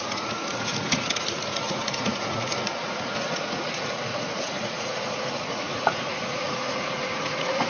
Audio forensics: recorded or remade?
remade